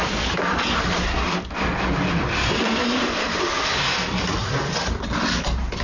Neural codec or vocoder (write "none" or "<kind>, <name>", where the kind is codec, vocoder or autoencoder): vocoder, BigVGAN v2